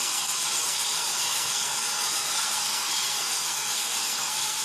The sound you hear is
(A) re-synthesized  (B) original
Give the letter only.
A